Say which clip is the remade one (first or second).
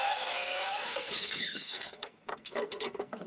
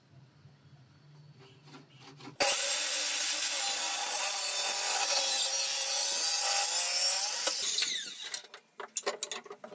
first